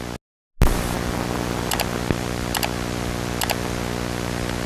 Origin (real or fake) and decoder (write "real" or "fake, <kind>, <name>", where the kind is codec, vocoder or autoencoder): real